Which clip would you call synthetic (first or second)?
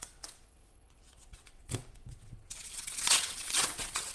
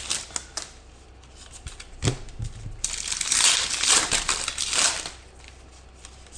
first